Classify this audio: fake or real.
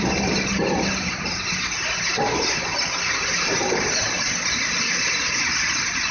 real